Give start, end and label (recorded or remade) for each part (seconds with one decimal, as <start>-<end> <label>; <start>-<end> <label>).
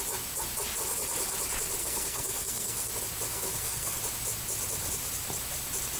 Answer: 0.0-1.8 recorded; 1.8-2.9 remade; 2.9-3.3 recorded; 3.3-4.0 remade; 4.0-6.0 recorded